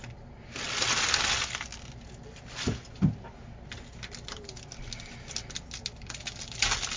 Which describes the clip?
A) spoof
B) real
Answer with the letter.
B